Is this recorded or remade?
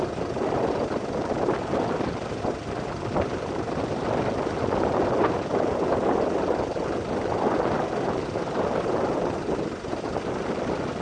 recorded